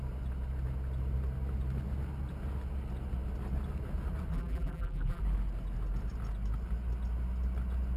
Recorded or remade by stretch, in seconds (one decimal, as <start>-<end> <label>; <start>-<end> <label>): 0.0-4.3 recorded; 4.3-5.2 remade; 5.2-8.0 recorded